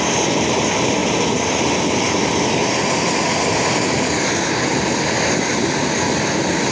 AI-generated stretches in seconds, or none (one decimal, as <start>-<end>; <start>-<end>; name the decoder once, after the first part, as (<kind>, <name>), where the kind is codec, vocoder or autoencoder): 0.0-1.0 (vocoder, BigVGAN v2); 1.8-6.7